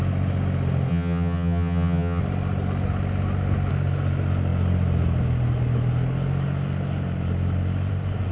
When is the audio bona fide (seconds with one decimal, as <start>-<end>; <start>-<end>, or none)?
0.0-0.9; 2.2-8.3